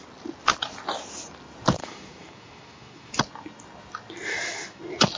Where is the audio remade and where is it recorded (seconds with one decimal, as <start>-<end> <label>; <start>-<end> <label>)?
0.0-1.8 recorded; 1.8-3.2 remade; 3.2-4.3 recorded; 4.3-4.8 remade; 4.8-5.2 recorded